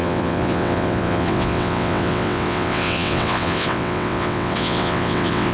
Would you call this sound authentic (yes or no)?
no